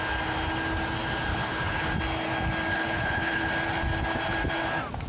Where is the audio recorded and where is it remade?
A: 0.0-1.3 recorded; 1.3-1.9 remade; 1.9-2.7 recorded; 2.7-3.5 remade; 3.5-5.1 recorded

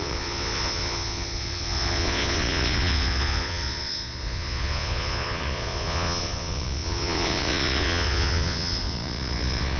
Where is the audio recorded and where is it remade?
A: 0.0-9.8 remade

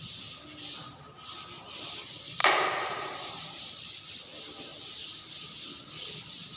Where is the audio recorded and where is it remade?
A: 0.0-2.4 recorded; 2.4-4.0 remade; 4.0-4.7 recorded; 4.7-5.3 remade; 5.3-6.6 recorded

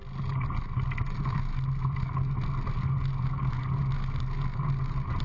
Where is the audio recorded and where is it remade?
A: 0.0-5.2 recorded

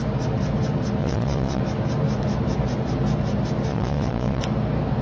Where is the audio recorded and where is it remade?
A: 0.0-1.0 recorded; 1.0-1.6 remade; 1.6-3.7 recorded; 3.7-4.4 remade; 4.4-5.0 recorded

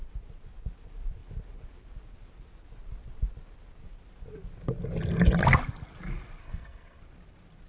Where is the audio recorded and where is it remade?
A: 0.0-6.4 recorded; 6.4-7.0 remade; 7.0-7.7 recorded

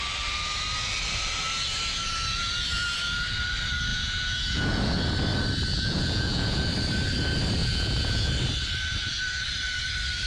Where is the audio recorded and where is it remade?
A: 0.0-3.9 recorded; 3.9-4.8 remade; 4.8-5.7 recorded; 5.7-6.6 remade; 6.6-7.6 recorded; 7.6-8.3 remade; 8.3-10.3 recorded

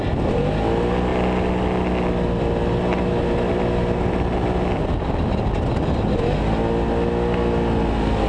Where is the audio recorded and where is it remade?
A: 0.0-8.3 recorded